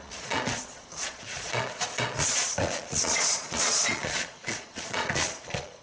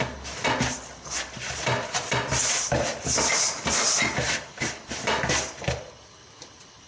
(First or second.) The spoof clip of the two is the first